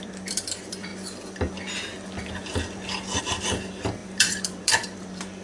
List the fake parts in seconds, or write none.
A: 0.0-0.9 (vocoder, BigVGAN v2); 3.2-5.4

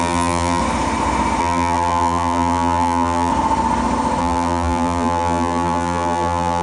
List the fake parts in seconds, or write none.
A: 0.0-0.6 (vocoder, BigVGAN v2); 1.4-3.3; 4.2-6.6

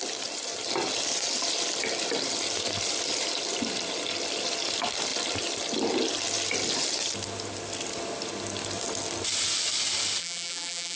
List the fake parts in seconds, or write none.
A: 10.2-11.0 (vocoder, BigVGAN v2)

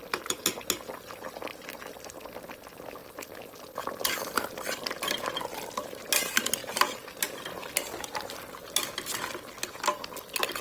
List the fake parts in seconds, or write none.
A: 1.5-2.2 (vocoder, BigVGAN v2); 3.0-4.9

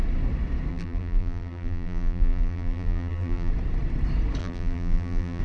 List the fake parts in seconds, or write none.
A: 0.7-3.5 (vocoder, BigVGAN v2); 4.4-5.4

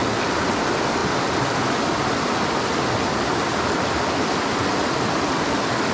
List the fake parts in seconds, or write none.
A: none

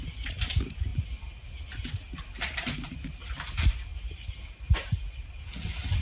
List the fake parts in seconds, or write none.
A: 3.9-5.3 (vocoder, BigVGAN v2)